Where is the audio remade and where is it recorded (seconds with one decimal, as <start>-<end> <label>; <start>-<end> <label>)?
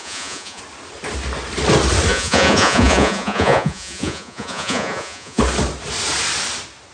0.0-0.6 remade; 0.6-2.1 recorded; 2.1-5.4 remade; 5.4-6.9 recorded